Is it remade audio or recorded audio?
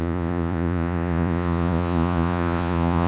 remade